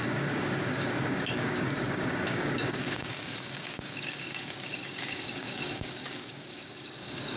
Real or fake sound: fake